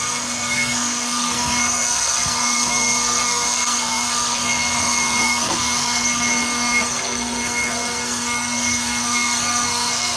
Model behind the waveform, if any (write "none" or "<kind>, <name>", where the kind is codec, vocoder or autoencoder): codec, SNAC